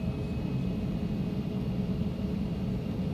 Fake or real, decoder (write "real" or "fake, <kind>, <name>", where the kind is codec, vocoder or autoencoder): real